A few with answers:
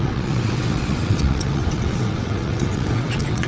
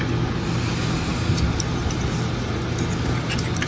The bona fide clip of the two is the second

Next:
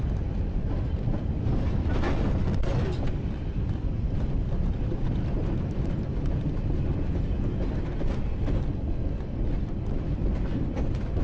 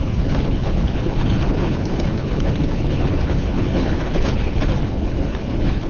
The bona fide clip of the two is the first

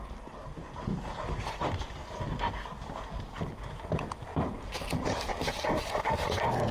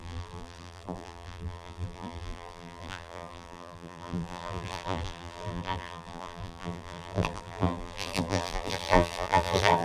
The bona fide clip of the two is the first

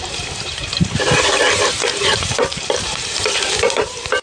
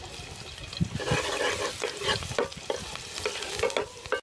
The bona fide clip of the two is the second